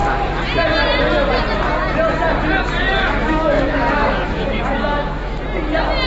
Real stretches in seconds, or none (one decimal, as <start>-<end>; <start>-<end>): 0.0-2.8; 5.4-6.1